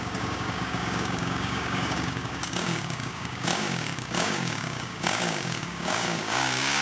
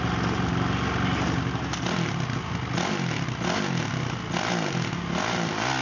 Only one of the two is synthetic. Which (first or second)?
first